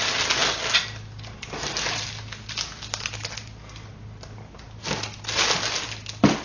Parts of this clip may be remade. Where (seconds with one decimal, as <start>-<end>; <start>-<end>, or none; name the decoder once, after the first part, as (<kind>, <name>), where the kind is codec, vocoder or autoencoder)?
none